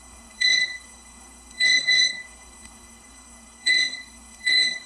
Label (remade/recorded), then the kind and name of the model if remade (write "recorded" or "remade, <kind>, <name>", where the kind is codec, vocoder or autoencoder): remade, codec, SNAC